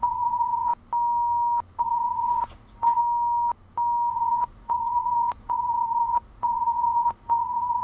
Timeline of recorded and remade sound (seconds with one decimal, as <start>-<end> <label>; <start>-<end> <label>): 0.0-0.7 remade; 0.7-1.8 recorded; 1.8-3.0 remade; 3.0-4.1 recorded; 4.1-7.8 remade